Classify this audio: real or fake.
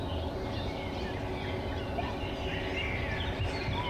real